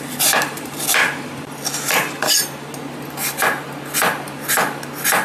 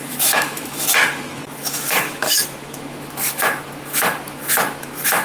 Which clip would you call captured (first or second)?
first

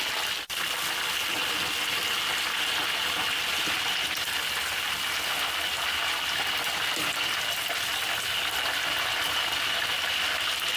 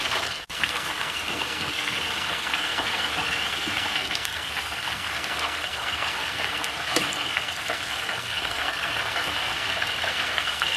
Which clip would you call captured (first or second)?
first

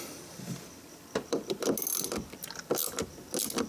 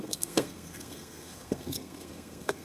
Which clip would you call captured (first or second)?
first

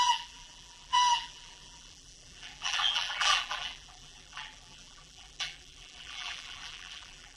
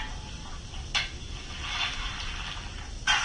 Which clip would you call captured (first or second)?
second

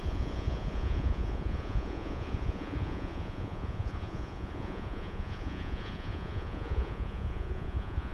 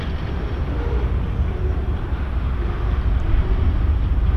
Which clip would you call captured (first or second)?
second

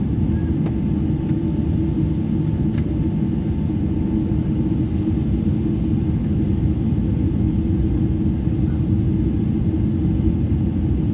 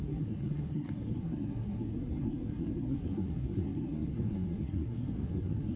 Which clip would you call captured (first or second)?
first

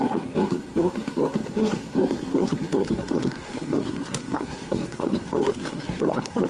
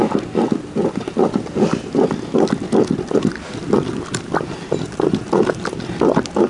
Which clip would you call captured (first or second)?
second